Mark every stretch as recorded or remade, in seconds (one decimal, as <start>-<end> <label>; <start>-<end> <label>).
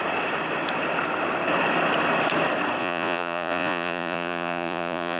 0.0-2.8 recorded; 2.8-5.2 remade